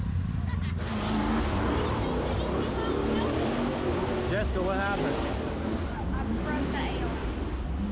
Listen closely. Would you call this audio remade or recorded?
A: recorded